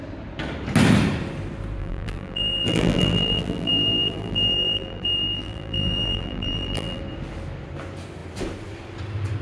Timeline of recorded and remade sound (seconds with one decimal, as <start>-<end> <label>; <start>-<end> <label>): 0.0-1.8 recorded; 1.8-7.0 remade; 7.0-9.4 recorded